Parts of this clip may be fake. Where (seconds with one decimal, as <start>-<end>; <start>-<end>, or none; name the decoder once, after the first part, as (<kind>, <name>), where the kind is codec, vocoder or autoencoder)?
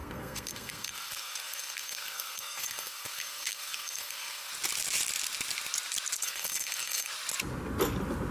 0.0-4.5 (codec, SNAC); 6.2-7.1